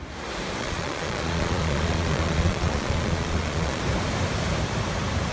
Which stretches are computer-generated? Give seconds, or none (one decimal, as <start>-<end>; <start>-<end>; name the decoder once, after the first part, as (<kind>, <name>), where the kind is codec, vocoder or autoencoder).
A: 0.6-3.8 (vocoder, Vocos)